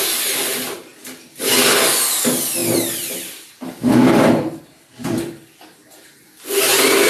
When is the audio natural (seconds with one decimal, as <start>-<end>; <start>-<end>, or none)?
0.0-0.9; 1.5-2.6; 6.2-7.1